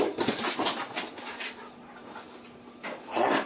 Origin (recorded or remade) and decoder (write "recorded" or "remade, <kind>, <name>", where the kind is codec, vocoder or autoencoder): recorded